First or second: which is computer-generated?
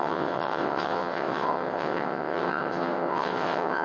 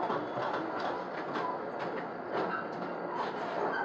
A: first